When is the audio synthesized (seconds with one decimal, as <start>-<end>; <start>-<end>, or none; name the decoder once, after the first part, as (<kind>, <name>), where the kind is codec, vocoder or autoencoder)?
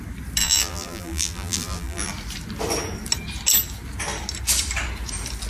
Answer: 0.4-2.1 (vocoder, BigVGAN v2)